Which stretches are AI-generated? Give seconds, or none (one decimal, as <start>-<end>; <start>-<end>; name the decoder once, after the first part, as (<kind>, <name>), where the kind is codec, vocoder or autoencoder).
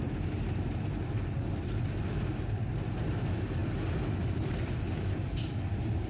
none